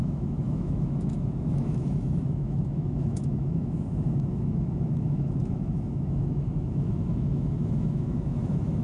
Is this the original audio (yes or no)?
no